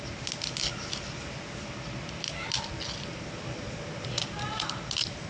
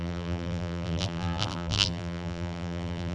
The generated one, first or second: second